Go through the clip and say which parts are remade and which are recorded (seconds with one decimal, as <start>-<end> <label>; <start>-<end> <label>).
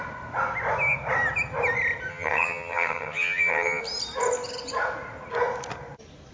0.0-2.1 recorded; 2.1-3.8 remade; 3.8-6.3 recorded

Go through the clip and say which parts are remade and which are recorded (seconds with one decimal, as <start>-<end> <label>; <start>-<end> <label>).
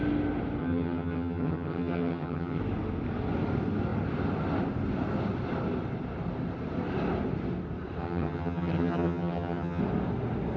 0.0-0.6 recorded; 0.6-2.6 remade; 2.6-8.0 recorded; 8.0-9.8 remade; 9.8-10.6 recorded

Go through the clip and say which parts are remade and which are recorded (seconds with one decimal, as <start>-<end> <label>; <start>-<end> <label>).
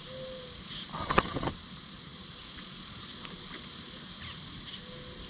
0.0-1.0 recorded; 1.0-1.5 remade; 1.5-5.3 recorded